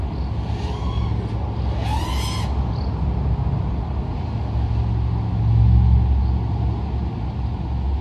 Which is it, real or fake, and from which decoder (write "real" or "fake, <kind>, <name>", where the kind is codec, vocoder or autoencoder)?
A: real